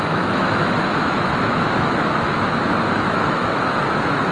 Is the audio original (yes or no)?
no